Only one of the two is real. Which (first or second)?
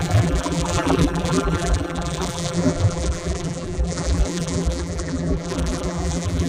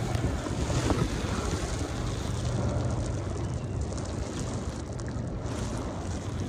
second